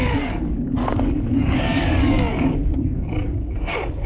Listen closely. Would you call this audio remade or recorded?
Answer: remade